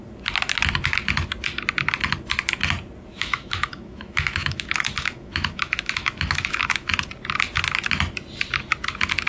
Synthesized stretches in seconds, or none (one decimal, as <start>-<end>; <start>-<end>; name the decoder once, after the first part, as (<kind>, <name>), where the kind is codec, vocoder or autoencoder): 3.1-6.9 (autoencoder, DAC-VAE)